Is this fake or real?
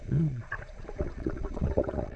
fake